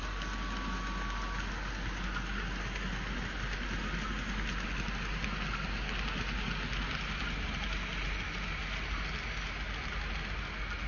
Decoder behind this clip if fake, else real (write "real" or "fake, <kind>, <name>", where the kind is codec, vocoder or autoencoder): real